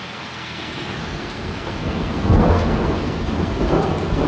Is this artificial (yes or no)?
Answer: yes